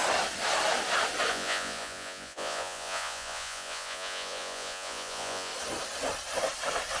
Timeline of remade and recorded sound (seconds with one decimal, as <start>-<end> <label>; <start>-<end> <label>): 0.0-1.3 recorded; 1.3-5.5 remade; 5.5-7.0 recorded